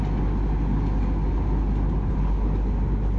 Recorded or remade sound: recorded